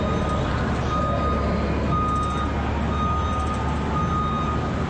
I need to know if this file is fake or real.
real